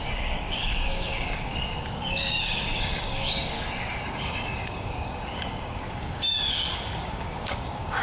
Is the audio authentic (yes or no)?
no